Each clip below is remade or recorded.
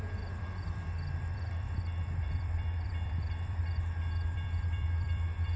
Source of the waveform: remade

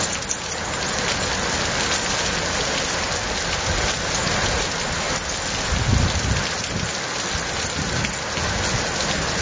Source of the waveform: recorded